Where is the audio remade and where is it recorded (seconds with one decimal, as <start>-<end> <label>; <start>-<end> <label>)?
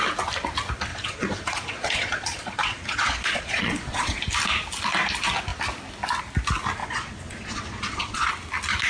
0.0-0.9 recorded; 0.9-4.2 remade; 4.2-6.8 recorded; 6.8-8.3 remade; 8.3-8.9 recorded